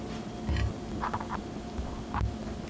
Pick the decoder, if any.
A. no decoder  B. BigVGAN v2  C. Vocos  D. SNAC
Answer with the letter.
A